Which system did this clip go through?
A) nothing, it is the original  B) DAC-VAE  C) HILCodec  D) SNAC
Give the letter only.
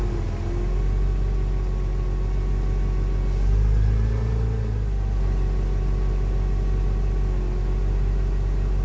A